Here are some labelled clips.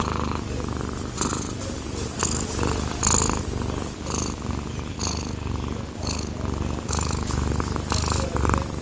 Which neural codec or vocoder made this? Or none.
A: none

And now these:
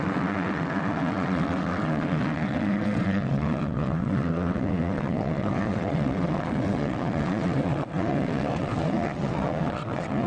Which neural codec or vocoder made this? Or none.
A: vocoder, WaveNeXt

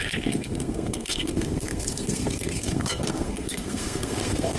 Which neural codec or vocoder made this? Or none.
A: codec, SNAC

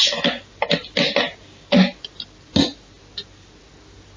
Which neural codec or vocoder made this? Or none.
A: none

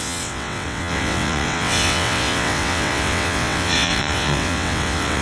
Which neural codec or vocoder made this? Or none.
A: vocoder, WaveNeXt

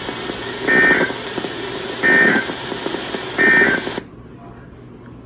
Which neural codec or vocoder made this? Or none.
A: none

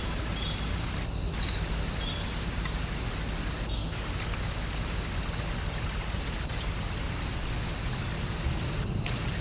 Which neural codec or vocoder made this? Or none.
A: none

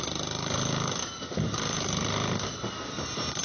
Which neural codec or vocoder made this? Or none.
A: none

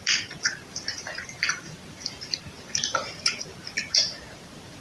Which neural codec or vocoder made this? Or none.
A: vocoder, BigVGAN v2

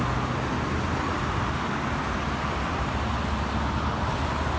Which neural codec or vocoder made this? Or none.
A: none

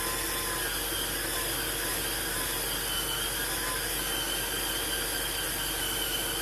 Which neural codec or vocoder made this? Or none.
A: none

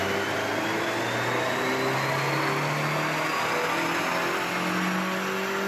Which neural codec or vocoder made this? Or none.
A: none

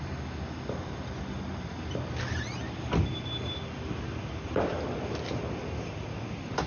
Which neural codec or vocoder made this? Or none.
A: none